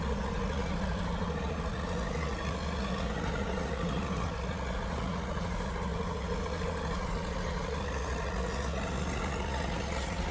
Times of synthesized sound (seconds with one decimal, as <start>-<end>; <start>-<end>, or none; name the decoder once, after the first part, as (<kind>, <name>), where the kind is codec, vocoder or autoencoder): 0.0-10.3 (vocoder, Vocos)